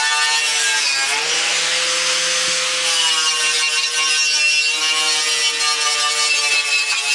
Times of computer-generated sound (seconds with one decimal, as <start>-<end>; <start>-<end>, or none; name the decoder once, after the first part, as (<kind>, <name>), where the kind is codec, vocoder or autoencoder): none